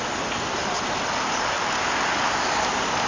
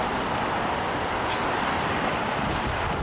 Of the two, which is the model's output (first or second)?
second